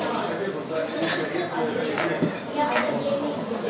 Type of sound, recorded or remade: recorded